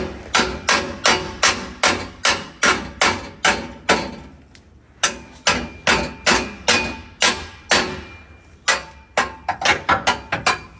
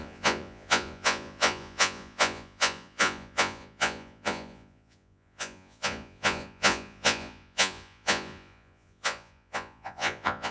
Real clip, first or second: first